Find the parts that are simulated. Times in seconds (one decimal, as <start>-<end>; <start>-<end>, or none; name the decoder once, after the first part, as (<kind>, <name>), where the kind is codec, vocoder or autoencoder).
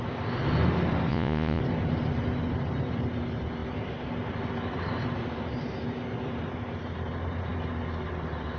1.1-1.6 (vocoder, Vocos)